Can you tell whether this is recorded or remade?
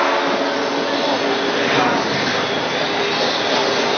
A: recorded